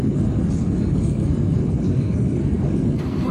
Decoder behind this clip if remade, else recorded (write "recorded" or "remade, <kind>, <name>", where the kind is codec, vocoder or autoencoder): remade, codec, SNAC